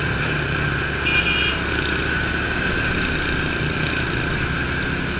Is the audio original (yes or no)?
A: yes